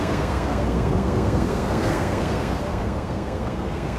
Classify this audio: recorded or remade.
remade